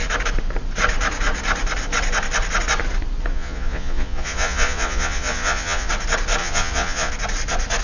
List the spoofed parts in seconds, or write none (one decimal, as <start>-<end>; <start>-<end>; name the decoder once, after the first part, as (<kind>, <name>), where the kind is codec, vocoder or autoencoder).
3.3-5.9 (vocoder, Vocos); 6.4-7.1